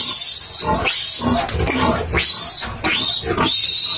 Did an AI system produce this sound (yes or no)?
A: no